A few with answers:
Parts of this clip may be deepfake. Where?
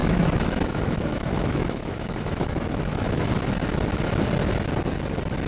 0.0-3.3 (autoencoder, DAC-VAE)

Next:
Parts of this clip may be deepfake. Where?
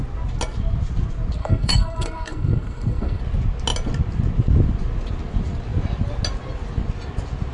1.4-3.2 (codec, SNAC)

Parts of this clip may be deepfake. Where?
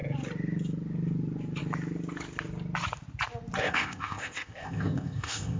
3.6-5.6 (codec, ZipCodec)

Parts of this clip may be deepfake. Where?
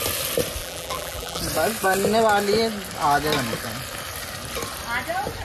0.6-1.4 (vocoder, BigVGAN v2)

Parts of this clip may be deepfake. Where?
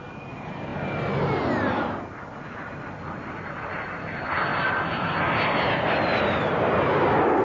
none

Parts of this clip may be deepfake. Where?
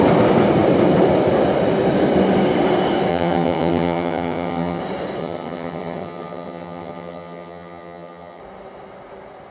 3.1-4.8 (vocoder, HiFi-GAN); 5.2-8.4